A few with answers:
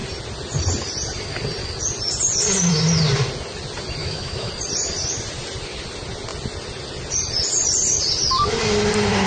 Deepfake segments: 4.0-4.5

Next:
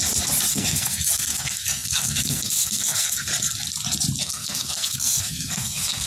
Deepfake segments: 0.5-3.3; 4.2-6.1

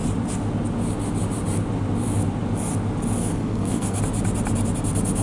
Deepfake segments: 3.2-4.0

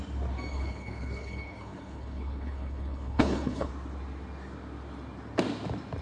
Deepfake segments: 0.5-3.7